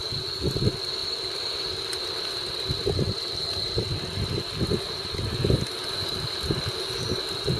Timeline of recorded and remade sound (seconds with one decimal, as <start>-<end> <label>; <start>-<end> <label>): 0.0-7.6 recorded

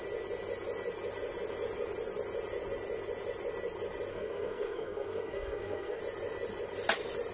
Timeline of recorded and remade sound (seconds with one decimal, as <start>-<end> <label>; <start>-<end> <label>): 0.0-4.1 recorded; 4.1-6.0 remade; 6.0-7.3 recorded